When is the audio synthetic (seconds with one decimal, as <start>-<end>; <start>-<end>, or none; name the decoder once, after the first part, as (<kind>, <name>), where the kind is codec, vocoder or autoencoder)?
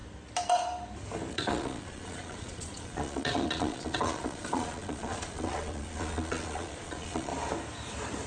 1.3-7.3 (vocoder, Vocos)